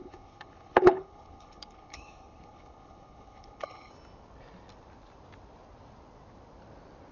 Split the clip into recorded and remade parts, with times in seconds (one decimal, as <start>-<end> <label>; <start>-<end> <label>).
0.0-3.9 remade; 3.9-7.1 recorded